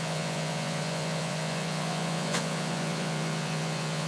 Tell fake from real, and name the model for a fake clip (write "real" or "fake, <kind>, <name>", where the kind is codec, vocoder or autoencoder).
fake, vocoder, Vocos